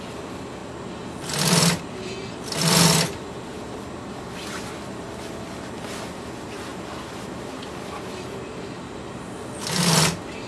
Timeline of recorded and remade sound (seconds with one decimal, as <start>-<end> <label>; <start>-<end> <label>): 0.0-10.5 recorded